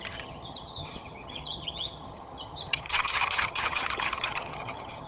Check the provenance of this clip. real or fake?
fake